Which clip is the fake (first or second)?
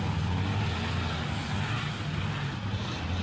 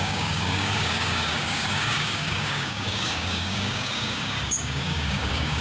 second